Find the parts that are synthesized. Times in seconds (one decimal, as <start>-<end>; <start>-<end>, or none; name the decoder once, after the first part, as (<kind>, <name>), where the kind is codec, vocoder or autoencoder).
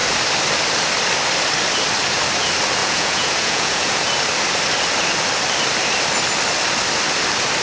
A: 2.8-4.1 (vocoder, Vocos)